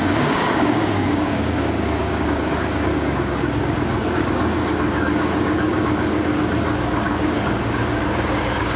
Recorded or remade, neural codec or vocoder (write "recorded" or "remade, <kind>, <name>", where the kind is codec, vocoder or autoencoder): remade, codec, DAC